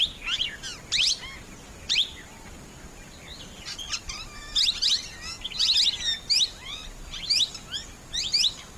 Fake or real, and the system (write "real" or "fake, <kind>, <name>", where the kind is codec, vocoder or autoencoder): real